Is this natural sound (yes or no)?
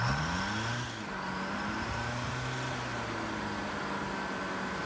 yes